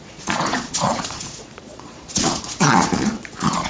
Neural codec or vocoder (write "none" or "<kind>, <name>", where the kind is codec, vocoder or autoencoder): vocoder, Vocos